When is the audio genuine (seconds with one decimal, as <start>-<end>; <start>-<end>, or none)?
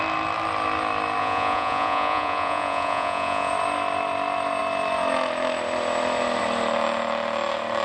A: 0.0-1.2; 3.5-7.8